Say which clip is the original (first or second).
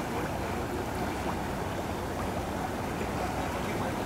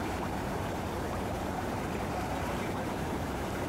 first